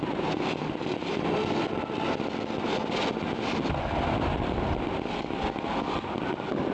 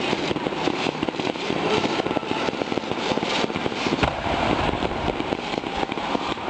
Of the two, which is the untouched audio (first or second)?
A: first